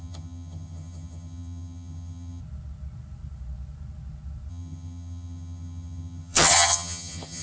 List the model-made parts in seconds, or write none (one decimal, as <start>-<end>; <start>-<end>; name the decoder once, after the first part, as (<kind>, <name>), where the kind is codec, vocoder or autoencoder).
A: 0.0-2.4 (vocoder, HiFi-GAN); 4.5-7.4